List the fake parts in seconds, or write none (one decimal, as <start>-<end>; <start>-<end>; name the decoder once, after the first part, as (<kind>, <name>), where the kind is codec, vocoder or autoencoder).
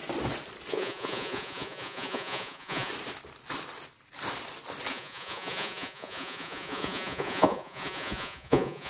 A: 0.7-2.9 (vocoder, Vocos); 4.9-8.9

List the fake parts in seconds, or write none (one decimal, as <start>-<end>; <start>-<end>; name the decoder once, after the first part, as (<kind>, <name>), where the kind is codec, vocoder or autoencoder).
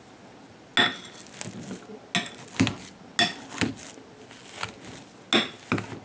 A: none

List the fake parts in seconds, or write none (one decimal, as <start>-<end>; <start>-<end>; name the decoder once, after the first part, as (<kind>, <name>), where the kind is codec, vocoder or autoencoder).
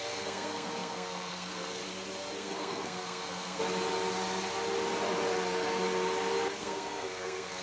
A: 0.0-1.8 (codec, SNAC); 2.4-3.6; 6.6-7.6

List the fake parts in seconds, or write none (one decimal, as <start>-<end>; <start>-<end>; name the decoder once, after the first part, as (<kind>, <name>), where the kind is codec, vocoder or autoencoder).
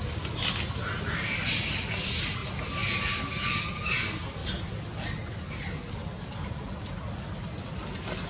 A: none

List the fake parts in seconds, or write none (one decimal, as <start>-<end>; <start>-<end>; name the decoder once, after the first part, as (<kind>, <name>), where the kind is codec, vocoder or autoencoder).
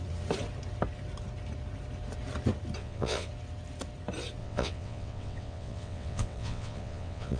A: 2.8-3.3 (vocoder, WaveNeXt); 4.4-7.4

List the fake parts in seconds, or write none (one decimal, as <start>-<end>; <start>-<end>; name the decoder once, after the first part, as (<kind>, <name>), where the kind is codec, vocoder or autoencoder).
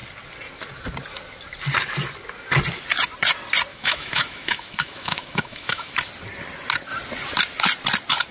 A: 3.7-5.9 (autoencoder, DAC-VAE)